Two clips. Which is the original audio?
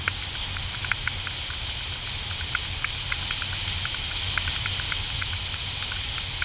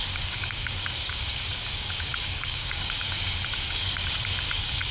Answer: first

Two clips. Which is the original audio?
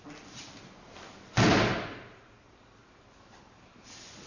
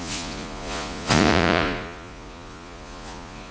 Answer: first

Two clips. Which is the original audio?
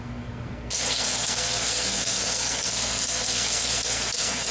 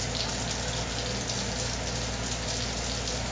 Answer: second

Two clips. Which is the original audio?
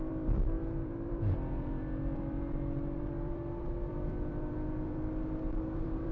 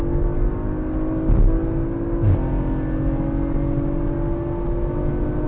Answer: second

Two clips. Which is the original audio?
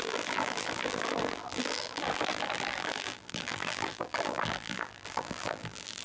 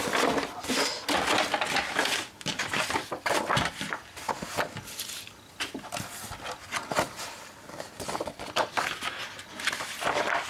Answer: second